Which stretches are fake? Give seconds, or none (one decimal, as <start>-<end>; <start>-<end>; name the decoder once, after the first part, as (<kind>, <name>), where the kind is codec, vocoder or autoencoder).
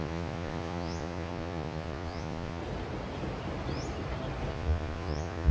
0.0-2.6 (vocoder, Vocos); 4.5-5.5